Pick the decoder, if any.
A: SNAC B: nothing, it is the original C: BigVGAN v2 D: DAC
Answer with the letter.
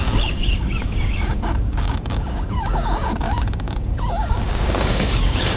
D